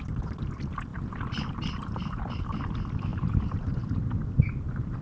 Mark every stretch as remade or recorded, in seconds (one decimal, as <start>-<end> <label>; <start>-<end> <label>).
0.0-0.9 recorded; 0.9-2.7 remade; 2.7-3.1 recorded; 3.1-3.7 remade; 3.7-5.0 recorded